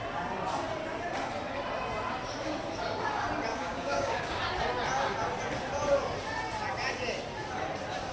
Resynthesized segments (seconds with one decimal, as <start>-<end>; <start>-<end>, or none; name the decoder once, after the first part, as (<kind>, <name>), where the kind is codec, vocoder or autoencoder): 3.5-4.4 (codec, DAC)